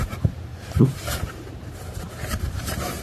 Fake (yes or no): yes